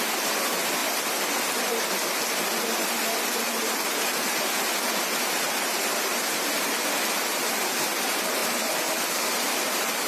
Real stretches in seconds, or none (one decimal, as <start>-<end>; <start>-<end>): 0.0-0.8; 1.8-8.4